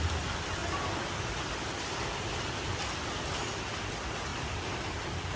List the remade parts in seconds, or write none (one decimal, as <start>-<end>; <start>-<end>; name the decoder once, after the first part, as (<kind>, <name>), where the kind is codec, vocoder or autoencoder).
0.0-4.3 (vocoder, BigVGAN v2); 4.9-5.4